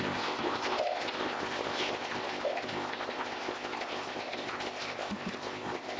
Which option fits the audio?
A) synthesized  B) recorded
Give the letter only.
A